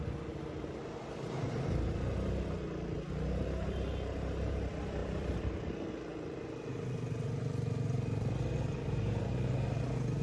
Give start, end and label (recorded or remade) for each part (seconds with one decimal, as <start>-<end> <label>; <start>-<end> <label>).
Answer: 0.0-5.0 recorded; 5.0-5.9 remade; 5.9-10.2 recorded